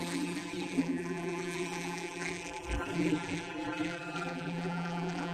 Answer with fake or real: fake